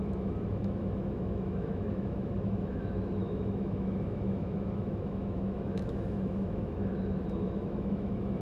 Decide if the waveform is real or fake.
fake